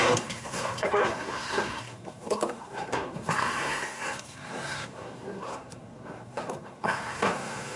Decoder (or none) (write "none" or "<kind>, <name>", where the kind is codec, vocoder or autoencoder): codec, SNAC